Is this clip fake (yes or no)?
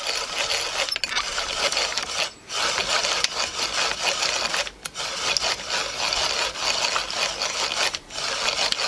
no